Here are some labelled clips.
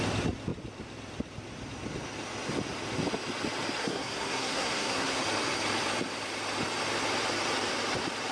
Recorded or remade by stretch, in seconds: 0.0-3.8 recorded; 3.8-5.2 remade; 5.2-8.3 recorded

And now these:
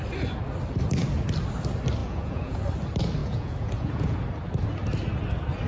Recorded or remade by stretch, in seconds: 0.0-2.0 recorded; 2.0-2.6 remade; 2.6-3.2 recorded; 3.2-4.2 remade; 4.2-5.7 recorded

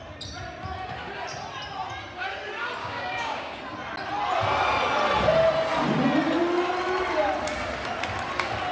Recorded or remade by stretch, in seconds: 0.0-2.8 recorded; 2.8-3.6 remade; 3.6-8.7 recorded

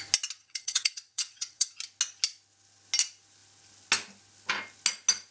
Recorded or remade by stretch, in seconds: 0.0-0.4 recorded; 0.4-1.7 remade; 1.7-5.3 recorded

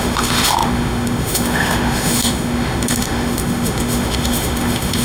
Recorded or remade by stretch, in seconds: 0.0-5.0 remade

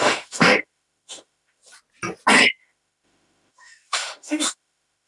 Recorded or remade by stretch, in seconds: 0.0-1.6 remade; 1.6-2.6 recorded; 2.6-5.1 remade

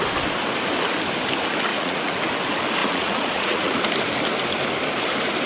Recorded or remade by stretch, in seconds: 0.0-1.7 recorded; 1.7-2.2 remade; 2.2-2.8 recorded; 2.8-3.8 remade; 3.8-5.5 recorded

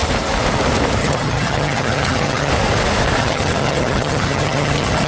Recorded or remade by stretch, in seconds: 0.0-1.0 recorded; 1.0-2.5 remade; 2.5-3.2 recorded; 3.2-5.1 remade